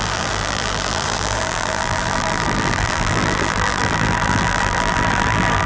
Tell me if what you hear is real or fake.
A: fake